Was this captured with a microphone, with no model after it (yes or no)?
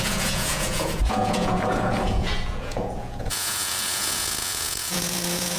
no